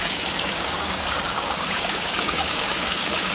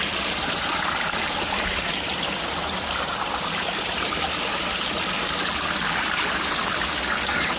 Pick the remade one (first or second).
first